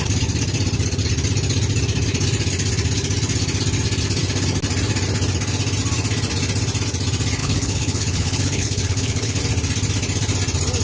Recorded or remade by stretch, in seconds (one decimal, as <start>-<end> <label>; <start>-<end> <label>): 0.0-7.4 recorded; 7.4-9.4 remade; 9.4-10.8 recorded